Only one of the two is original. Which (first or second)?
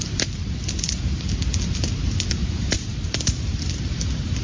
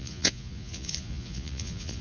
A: first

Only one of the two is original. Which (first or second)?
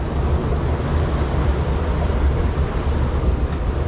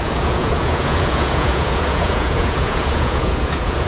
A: first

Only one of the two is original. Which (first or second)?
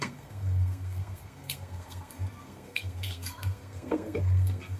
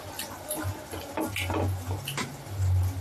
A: second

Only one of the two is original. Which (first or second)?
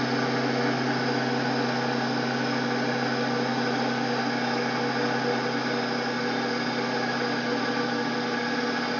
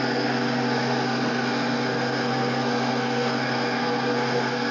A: first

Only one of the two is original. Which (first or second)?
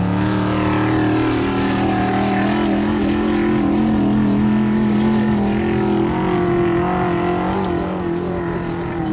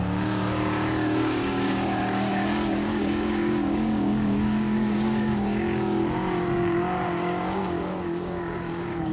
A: first